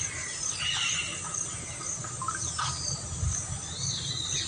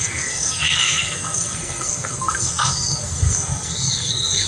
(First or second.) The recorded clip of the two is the first